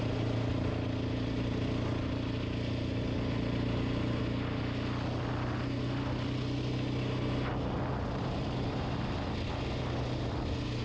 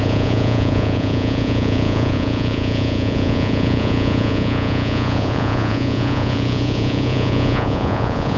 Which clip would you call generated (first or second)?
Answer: second